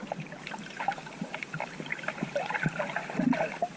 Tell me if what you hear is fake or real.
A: real